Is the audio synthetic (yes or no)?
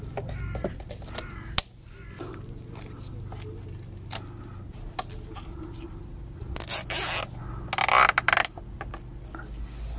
no